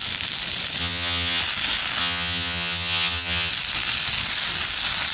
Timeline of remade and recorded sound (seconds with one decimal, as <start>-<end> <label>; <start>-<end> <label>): 0.0-0.8 recorded; 0.8-1.4 remade; 1.4-2.0 recorded; 2.0-3.5 remade; 3.5-5.1 recorded